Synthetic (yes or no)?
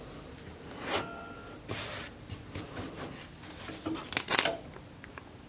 no